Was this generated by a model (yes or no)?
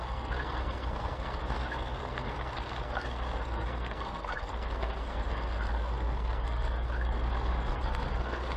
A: yes